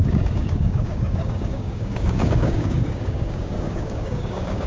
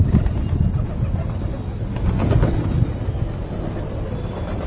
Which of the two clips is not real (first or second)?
first